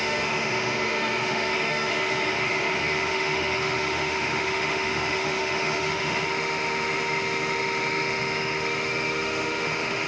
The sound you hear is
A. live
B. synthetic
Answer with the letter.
B